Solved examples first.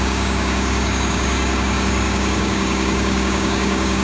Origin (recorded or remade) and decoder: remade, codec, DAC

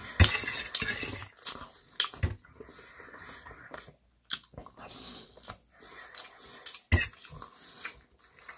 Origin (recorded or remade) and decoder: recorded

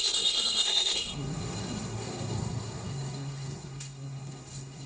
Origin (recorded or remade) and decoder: remade, codec, SNAC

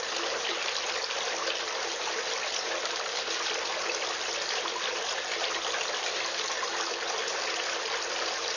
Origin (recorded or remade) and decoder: recorded